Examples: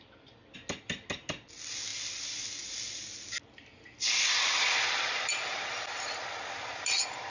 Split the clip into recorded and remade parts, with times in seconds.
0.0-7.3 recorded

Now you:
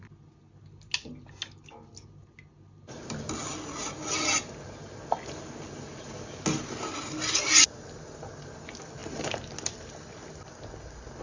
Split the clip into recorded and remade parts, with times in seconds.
0.0-11.2 recorded